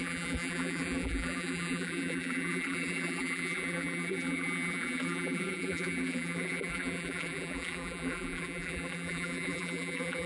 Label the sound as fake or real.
fake